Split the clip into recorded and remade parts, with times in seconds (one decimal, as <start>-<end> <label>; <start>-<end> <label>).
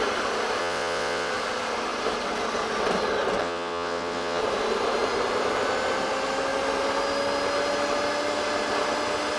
0.0-0.6 recorded; 0.6-1.3 remade; 1.3-3.4 recorded; 3.4-4.4 remade; 4.4-9.4 recorded